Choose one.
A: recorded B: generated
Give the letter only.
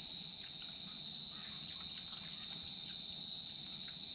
A